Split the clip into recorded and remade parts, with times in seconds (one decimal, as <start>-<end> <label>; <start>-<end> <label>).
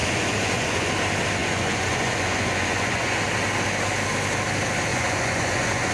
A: 0.0-0.9 remade; 0.9-1.4 recorded; 1.4-3.2 remade; 3.2-4.9 recorded; 4.9-5.9 remade